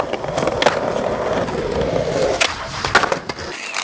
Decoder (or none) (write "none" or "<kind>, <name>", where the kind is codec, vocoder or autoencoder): none